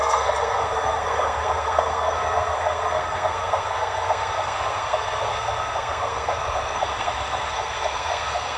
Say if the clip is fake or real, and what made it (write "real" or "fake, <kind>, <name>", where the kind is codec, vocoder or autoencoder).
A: fake, codec, SNAC